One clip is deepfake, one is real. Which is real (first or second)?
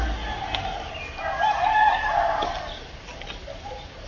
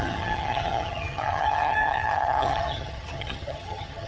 first